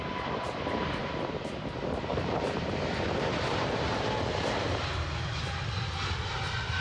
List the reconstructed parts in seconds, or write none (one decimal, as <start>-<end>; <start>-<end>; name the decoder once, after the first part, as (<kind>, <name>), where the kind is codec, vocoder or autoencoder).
1.0-1.5 (vocoder, BigVGAN v2); 2.1-4.0